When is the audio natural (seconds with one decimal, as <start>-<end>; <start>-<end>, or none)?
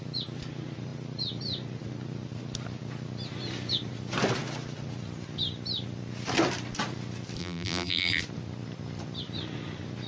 0.0-7.4; 8.2-10.1